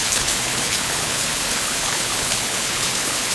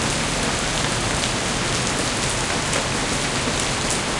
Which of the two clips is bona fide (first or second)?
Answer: second